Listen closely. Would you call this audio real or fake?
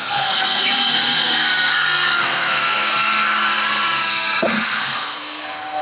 fake